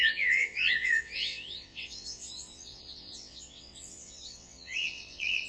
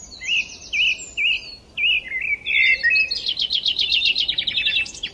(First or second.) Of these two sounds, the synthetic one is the first